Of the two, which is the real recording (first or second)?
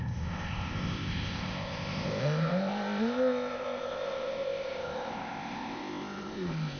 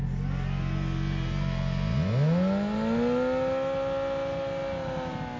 second